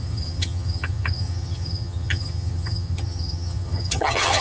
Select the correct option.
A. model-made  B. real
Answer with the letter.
A